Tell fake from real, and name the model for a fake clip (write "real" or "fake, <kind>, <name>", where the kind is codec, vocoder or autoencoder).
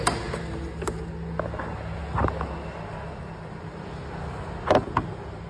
real